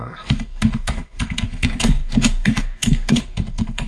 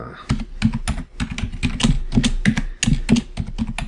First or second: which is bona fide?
second